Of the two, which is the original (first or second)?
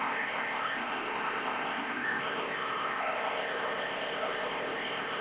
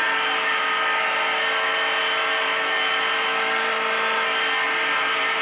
second